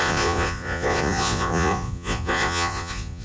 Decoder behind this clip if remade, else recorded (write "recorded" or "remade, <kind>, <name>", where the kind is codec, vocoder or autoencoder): remade, vocoder, Vocos